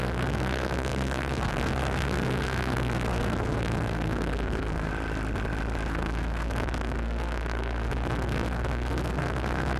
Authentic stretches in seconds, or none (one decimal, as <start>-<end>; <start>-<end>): 4.9-5.9